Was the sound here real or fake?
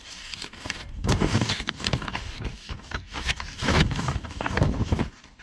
fake